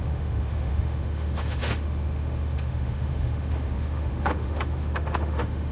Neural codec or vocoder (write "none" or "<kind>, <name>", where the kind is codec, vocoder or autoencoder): autoencoder, DAC-VAE